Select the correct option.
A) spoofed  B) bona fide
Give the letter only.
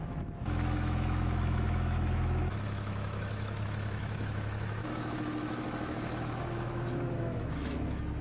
A